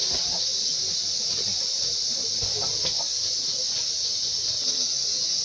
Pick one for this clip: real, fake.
real